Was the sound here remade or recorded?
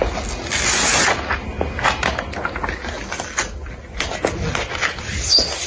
recorded